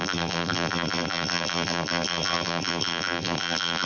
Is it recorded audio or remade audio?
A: remade